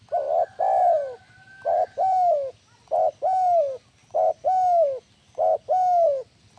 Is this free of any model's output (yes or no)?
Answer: yes